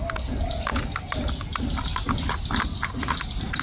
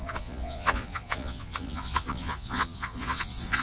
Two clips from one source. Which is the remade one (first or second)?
second